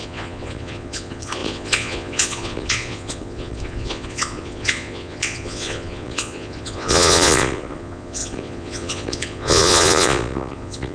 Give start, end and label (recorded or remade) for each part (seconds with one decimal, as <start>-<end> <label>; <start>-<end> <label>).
0.0-10.9 remade